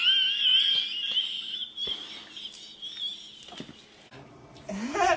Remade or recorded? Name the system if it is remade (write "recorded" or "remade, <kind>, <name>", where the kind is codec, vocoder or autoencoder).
recorded